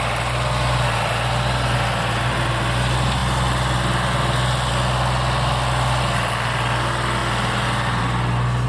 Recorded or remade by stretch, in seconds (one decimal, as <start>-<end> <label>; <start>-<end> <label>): 0.0-8.7 recorded